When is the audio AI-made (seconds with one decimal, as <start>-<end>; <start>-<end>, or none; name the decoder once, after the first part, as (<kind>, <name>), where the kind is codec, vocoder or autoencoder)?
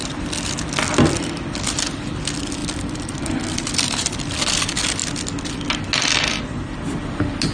2.6-4.6 (vocoder, BigVGAN v2)